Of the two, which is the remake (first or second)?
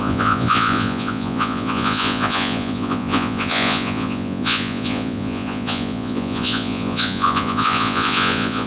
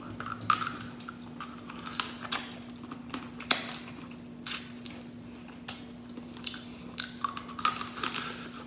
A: first